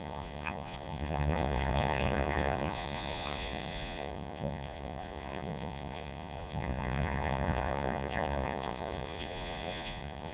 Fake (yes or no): yes